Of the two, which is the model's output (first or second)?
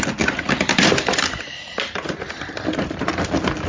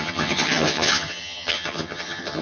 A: second